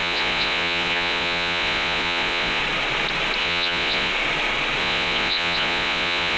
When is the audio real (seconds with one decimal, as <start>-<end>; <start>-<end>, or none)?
2.6-3.4; 4.1-4.8